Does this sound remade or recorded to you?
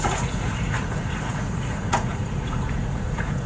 remade